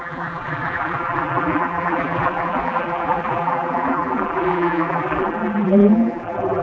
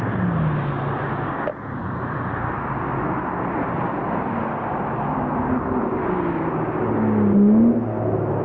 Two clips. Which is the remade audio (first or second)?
first